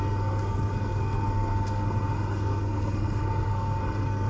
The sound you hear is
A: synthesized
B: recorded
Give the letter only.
A